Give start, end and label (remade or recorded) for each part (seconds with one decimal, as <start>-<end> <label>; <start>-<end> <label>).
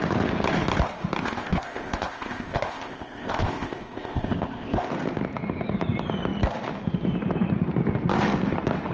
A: 0.0-1.2 recorded; 1.2-4.9 remade; 4.9-8.9 recorded